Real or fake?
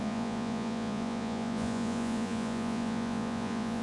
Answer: fake